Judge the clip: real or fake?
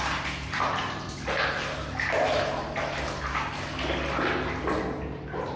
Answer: real